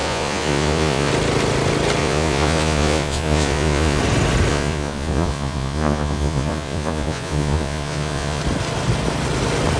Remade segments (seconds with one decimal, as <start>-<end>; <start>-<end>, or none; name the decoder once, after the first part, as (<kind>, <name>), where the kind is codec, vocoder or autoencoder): 0.0-1.1 (vocoder, Vocos); 2.0-4.0; 4.5-8.4